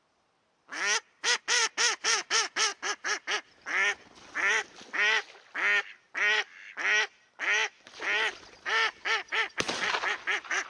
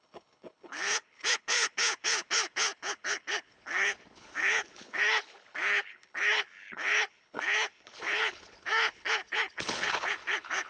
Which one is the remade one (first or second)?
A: second